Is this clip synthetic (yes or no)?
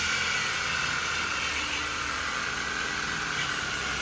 no